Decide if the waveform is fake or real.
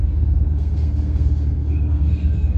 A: fake